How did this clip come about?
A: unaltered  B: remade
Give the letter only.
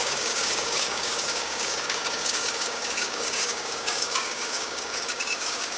B